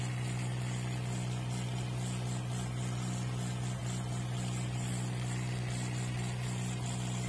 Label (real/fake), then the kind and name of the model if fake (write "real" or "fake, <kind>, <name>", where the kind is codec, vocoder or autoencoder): real